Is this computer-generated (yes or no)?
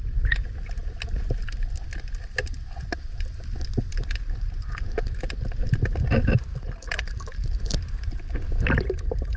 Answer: no